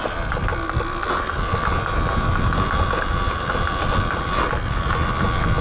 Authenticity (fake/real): real